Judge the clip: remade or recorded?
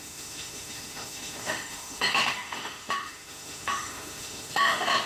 remade